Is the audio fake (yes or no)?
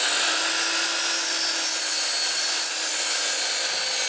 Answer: no